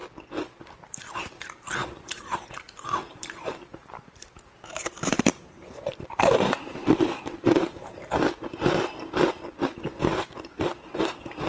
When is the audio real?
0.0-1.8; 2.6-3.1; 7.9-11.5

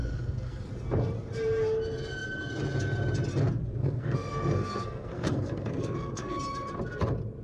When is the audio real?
0.7-3.8; 6.3-7.4

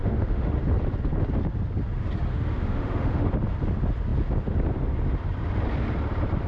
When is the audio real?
0.6-2.3; 3.3-6.5

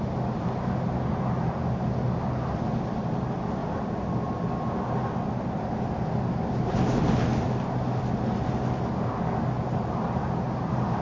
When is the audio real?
0.0-11.0

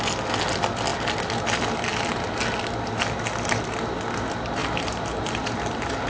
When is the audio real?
0.0-4.6

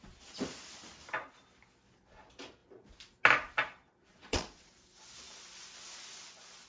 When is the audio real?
0.0-4.0; 4.7-6.7